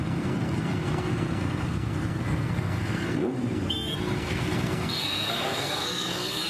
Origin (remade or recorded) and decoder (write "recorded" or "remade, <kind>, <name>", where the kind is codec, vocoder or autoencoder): remade, codec, SNAC